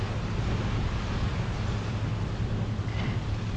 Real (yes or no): yes